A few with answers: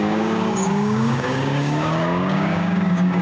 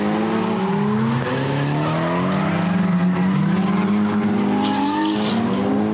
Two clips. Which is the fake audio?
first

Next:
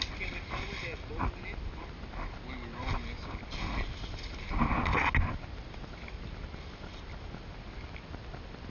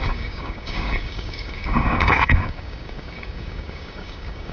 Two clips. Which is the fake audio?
second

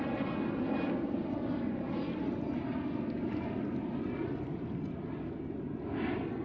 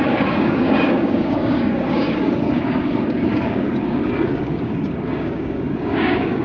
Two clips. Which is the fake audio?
second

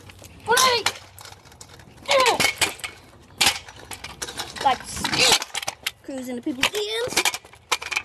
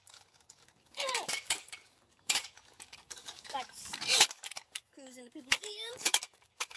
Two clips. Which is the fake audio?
second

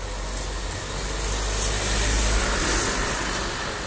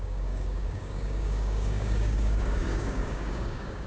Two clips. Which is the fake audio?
second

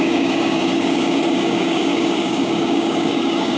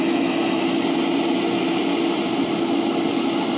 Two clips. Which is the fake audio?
first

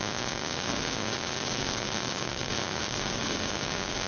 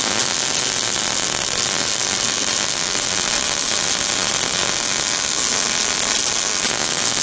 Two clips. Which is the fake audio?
first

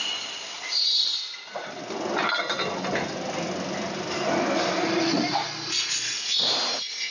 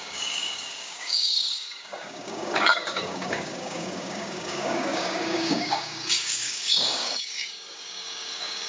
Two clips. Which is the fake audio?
second